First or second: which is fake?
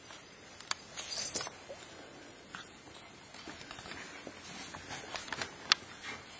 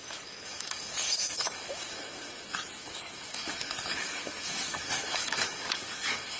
second